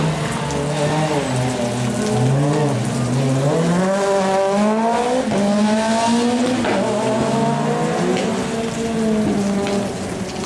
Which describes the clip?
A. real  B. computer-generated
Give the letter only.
A